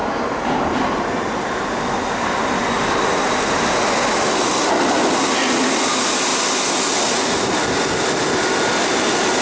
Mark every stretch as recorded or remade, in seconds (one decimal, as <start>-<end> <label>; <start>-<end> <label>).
0.0-1.3 remade; 1.3-9.4 recorded